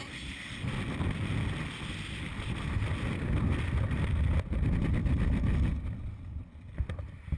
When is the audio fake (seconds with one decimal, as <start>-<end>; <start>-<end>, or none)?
none